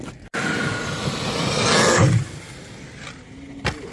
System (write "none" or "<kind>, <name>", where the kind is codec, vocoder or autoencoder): none